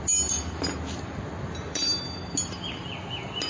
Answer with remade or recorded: recorded